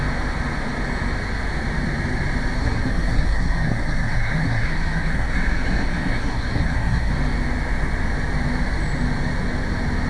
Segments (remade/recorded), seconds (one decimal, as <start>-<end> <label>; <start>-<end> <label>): 0.0-2.6 recorded; 2.6-7.1 remade; 7.1-10.1 recorded